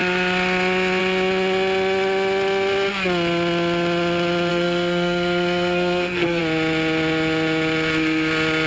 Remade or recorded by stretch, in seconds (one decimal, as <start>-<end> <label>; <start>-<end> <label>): 0.0-4.5 recorded; 4.5-6.4 remade; 6.4-8.7 recorded